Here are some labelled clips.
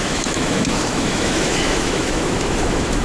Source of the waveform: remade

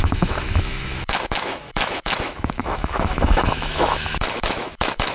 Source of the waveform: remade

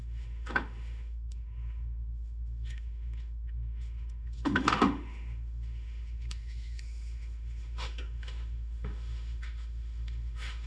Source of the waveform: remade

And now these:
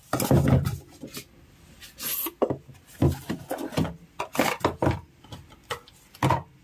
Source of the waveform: recorded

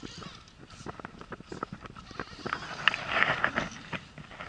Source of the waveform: recorded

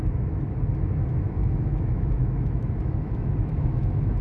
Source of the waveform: remade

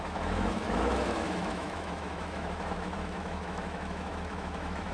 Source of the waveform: remade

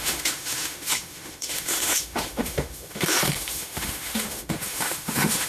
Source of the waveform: remade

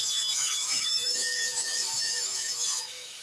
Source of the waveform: remade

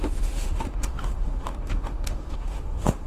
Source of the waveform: remade